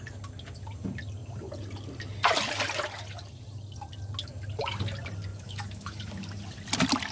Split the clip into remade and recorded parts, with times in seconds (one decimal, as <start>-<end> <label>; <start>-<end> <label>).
0.0-5.3 recorded; 5.3-6.0 remade; 6.0-7.1 recorded